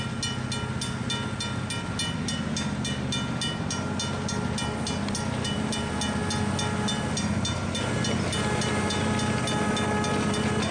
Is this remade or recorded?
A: recorded